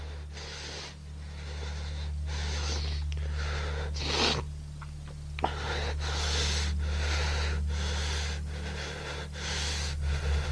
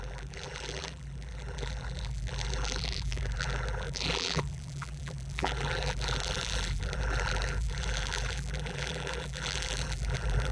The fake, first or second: second